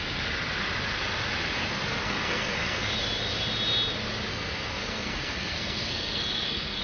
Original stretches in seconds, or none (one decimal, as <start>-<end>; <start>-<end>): 0.0-1.9; 2.9-4.3